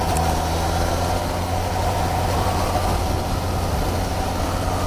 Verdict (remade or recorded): recorded